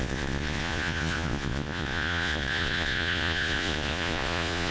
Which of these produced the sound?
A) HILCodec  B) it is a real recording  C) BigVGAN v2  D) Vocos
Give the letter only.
D